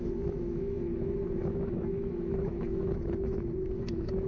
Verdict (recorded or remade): remade